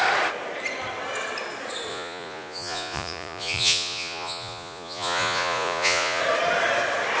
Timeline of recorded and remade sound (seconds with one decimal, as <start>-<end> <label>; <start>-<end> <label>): 0.0-1.9 recorded; 1.9-6.2 remade; 6.2-7.2 recorded